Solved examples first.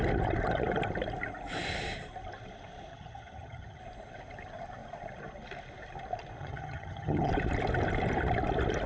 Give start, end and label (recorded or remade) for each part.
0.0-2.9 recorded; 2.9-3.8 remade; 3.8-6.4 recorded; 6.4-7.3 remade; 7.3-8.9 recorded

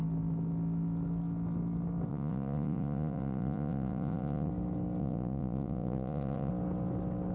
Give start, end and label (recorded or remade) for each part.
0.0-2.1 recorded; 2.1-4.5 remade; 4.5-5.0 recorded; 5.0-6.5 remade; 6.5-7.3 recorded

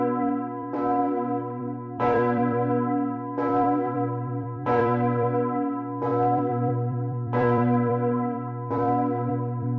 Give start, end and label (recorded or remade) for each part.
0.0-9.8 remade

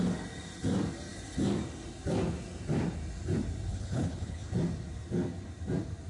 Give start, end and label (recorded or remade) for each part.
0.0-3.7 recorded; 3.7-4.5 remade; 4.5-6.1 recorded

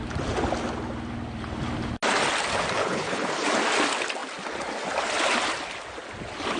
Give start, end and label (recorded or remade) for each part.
0.0-2.8 recorded; 2.8-3.3 remade; 3.3-6.6 recorded

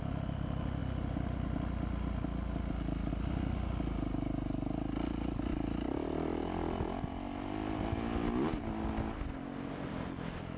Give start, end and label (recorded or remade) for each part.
0.0-10.6 recorded